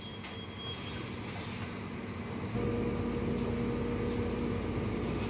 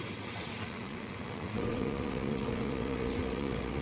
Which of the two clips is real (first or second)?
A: first